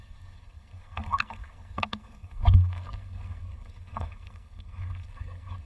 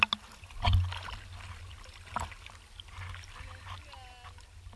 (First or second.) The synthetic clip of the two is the first